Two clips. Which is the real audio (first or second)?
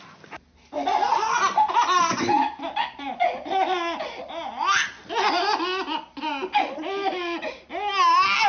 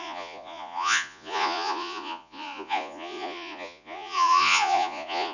first